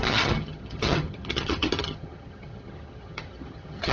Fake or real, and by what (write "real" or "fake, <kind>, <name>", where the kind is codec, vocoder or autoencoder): fake, vocoder, HiFi-GAN